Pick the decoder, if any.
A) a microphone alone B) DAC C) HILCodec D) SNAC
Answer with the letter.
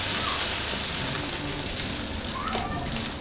A